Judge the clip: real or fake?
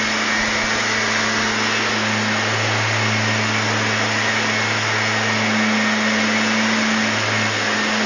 real